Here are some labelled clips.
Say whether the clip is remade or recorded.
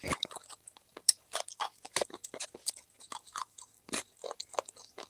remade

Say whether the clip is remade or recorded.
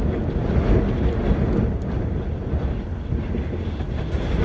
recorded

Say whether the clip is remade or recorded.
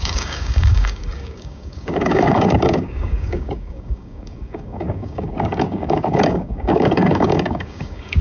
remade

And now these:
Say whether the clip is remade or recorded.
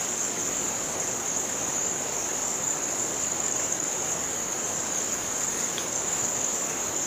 remade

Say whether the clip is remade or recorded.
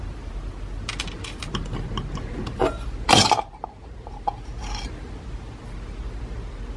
recorded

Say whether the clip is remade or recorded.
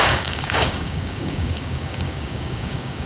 remade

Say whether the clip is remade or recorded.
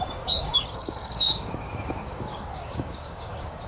remade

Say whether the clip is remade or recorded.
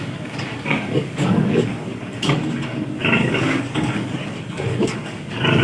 remade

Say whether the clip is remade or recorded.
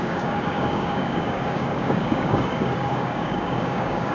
remade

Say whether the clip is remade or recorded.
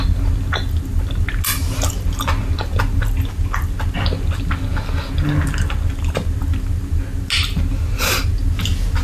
recorded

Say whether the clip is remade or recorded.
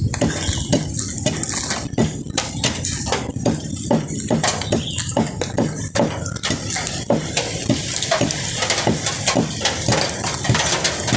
recorded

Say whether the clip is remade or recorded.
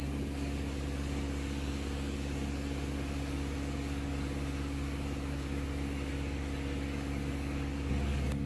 remade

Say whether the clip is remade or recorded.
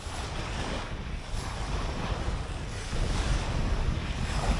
remade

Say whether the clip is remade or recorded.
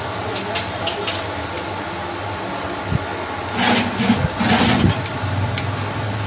recorded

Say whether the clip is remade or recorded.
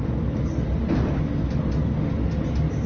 recorded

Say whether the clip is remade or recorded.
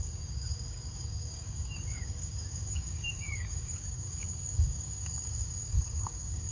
remade